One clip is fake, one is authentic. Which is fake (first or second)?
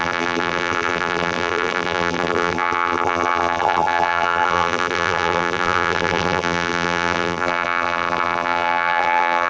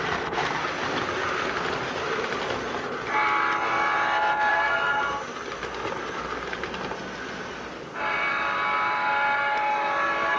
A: first